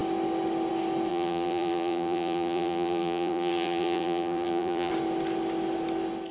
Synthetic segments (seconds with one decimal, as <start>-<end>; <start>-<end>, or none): 1.1-4.9